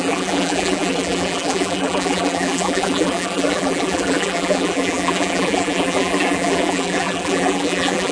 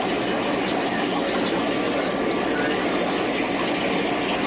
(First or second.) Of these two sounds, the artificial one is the first